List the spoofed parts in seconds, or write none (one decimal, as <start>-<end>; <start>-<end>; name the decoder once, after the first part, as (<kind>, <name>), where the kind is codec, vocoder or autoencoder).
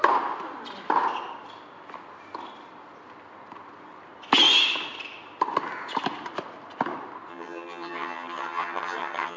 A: 7.3-9.4 (vocoder, HiFi-GAN)